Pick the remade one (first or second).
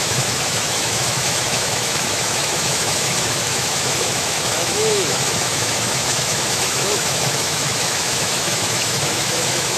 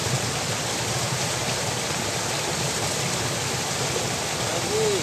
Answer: first